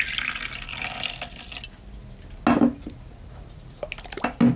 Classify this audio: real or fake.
real